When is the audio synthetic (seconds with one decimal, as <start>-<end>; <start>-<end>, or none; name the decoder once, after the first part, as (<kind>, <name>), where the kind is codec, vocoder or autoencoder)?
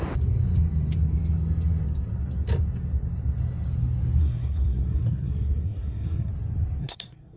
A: 4.2-6.3 (codec, SNAC); 6.8-7.4